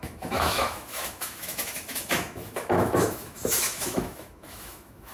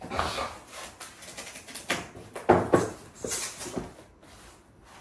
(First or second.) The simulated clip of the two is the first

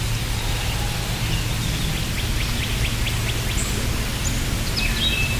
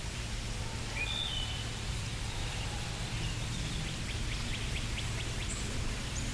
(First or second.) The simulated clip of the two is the second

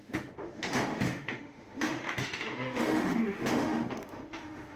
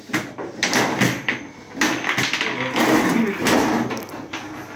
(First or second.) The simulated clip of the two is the first